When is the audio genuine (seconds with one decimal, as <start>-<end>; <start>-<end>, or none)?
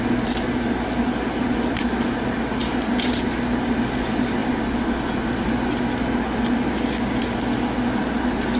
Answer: 0.0-8.6